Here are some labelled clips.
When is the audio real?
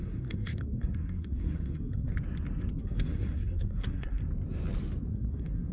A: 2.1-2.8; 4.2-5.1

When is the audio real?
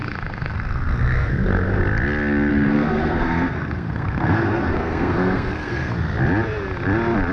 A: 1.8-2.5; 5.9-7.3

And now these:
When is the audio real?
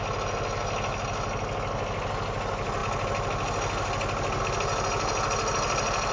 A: 0.0-6.1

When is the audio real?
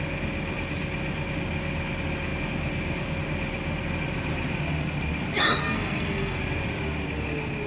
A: 0.0-5.6; 6.4-7.7